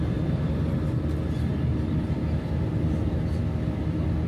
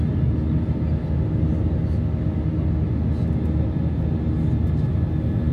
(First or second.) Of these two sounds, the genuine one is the second